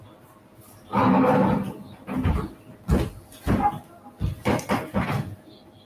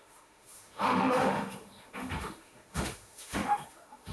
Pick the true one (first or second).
first